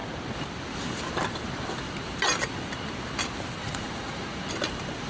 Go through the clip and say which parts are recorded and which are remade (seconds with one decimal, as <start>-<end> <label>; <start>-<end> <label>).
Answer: 0.0-3.6 recorded; 3.6-4.5 remade; 4.5-5.1 recorded